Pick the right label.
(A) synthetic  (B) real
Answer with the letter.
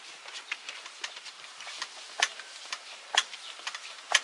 B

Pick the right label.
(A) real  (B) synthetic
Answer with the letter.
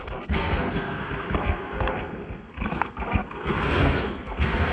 B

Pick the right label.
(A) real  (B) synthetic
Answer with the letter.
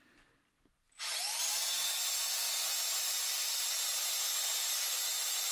A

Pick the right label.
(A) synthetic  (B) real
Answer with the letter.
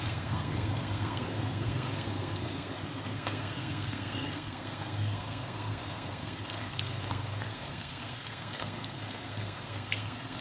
A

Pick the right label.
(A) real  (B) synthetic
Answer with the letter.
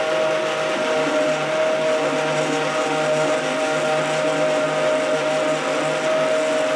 A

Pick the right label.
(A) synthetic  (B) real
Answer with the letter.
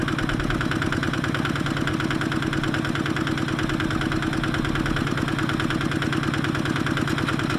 B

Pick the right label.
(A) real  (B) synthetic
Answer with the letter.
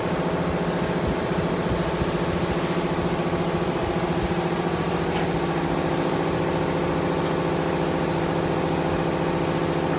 A